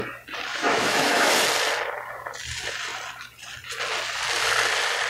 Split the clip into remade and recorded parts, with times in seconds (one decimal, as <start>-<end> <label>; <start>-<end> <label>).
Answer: 0.0-0.5 recorded; 0.5-1.3 remade; 1.3-5.1 recorded